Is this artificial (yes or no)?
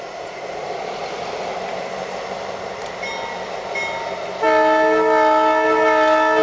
no